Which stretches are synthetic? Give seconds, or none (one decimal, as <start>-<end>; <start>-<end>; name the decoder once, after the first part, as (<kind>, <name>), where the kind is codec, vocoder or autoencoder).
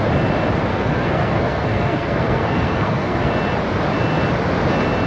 0.7-3.3 (codec, SNAC)